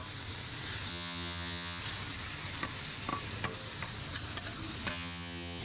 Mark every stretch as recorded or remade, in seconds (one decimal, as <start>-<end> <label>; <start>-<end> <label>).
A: 0.0-0.9 recorded; 0.9-1.8 remade; 1.8-4.9 recorded; 4.9-5.6 remade